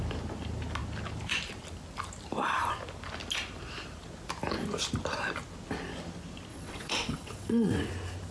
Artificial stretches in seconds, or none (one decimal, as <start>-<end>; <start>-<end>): 6.5-7.9